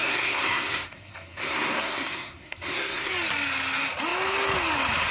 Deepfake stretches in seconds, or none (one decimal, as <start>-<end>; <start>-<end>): 0.0-3.1